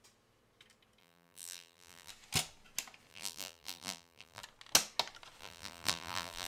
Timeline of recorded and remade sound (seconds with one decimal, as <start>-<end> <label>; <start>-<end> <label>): 0.0-1.0 recorded; 1.0-2.1 remade; 2.1-3.1 recorded; 3.1-4.4 remade; 4.4-5.4 recorded; 5.4-6.5 remade